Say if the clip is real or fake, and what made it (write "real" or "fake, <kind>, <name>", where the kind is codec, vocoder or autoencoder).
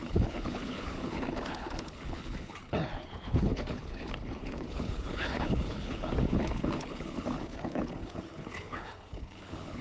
fake, codec, HILCodec